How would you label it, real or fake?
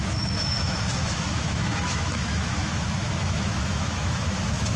fake